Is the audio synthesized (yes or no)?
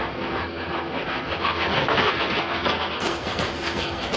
yes